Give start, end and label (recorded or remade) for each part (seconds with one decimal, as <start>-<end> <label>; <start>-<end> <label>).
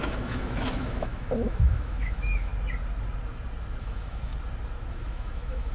0.0-2.5 remade; 2.5-3.8 recorded; 3.8-4.3 remade; 4.3-4.9 recorded; 4.9-5.7 remade